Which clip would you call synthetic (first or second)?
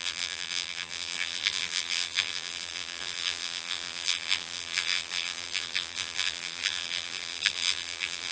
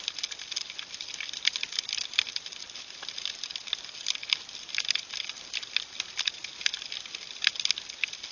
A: first